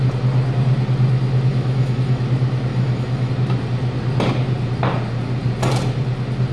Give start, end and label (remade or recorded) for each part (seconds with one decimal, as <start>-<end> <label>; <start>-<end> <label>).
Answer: 0.0-1.5 recorded; 1.5-2.2 remade; 2.2-2.7 recorded; 2.7-3.3 remade; 3.3-6.5 recorded